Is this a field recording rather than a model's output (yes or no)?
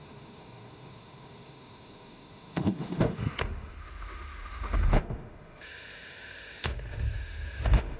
no